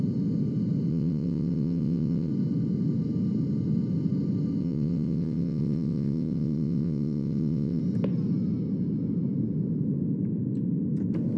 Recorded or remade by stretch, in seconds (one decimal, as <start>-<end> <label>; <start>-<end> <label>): 0.0-0.9 recorded; 0.9-2.3 remade; 2.3-4.6 recorded; 4.6-7.8 remade; 7.8-11.4 recorded